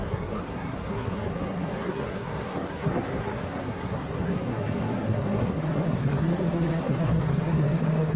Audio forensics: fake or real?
fake